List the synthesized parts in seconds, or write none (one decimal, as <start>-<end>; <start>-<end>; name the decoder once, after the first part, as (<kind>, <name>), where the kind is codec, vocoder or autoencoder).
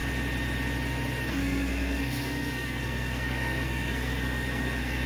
1.3-5.1 (codec, SNAC)